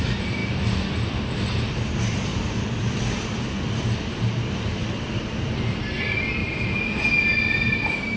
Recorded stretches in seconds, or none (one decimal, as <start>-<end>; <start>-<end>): 0.0-8.2

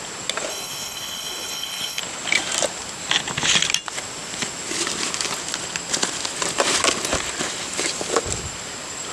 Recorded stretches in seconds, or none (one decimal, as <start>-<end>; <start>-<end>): 0.0-0.5; 2.0-9.1

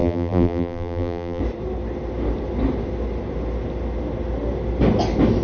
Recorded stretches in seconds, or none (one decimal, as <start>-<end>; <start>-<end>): 1.4-5.4

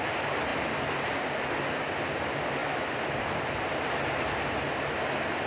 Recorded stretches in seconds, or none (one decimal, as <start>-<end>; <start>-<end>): 0.0-5.5